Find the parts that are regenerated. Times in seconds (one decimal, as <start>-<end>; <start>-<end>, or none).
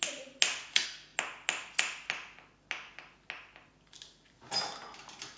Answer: none